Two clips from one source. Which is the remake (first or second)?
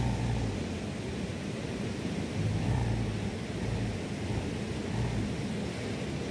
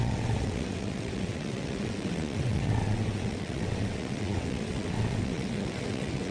second